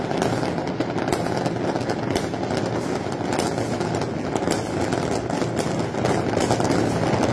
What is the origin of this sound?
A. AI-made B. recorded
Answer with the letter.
B